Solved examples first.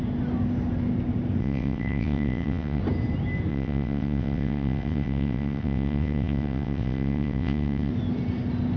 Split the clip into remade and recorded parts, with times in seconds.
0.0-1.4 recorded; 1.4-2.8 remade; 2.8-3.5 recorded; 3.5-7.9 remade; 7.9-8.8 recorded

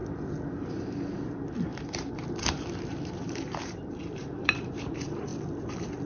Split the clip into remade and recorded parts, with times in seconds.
0.0-0.7 recorded; 0.7-5.3 remade; 5.3-6.1 recorded

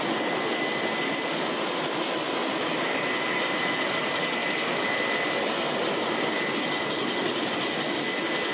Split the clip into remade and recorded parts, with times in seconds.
0.0-8.5 recorded

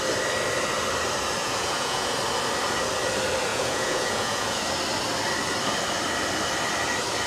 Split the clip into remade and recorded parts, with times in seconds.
0.0-1.4 recorded; 1.4-2.1 remade; 2.1-3.5 recorded; 3.5-4.6 remade; 4.6-7.3 recorded

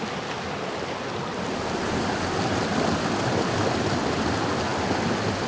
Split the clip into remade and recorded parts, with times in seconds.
0.0-5.5 recorded

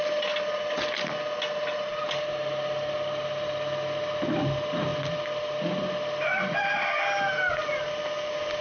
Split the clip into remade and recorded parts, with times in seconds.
0.0-8.6 recorded